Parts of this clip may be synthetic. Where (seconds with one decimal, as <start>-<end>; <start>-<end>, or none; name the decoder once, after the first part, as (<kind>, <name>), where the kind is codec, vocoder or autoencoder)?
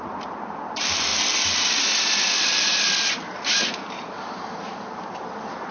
none